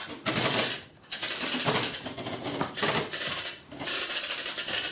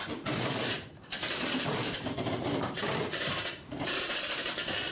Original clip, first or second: first